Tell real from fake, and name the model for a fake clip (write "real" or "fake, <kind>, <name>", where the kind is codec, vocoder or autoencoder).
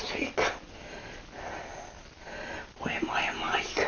real